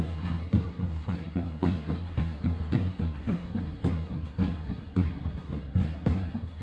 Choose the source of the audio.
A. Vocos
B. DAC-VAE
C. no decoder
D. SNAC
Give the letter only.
D